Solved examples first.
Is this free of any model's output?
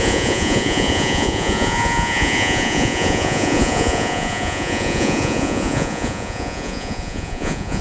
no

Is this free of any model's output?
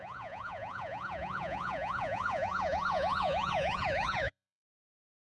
no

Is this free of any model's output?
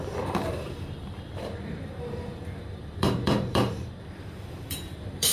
no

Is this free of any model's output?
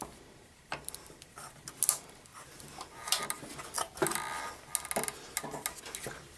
yes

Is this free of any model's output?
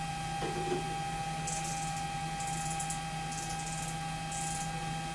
yes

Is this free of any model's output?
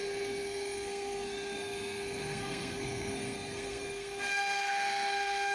no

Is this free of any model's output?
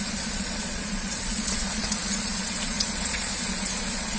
no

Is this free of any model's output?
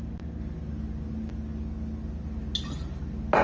yes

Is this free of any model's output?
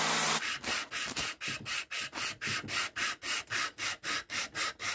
yes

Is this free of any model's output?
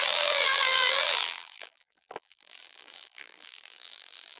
no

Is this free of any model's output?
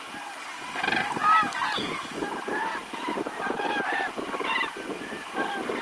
yes